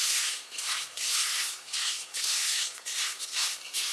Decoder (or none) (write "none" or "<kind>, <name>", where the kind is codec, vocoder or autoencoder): codec, SNAC